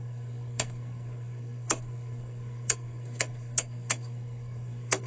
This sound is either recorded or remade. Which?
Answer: remade